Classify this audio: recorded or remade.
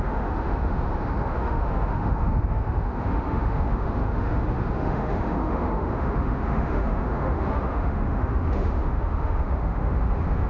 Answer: remade